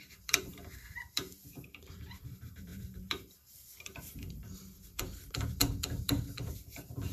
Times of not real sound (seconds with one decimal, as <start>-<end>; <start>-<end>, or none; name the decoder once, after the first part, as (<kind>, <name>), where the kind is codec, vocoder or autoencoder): 0.0-7.1 (vocoder, BigVGAN v2)